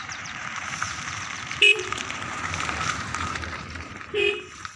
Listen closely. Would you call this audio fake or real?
fake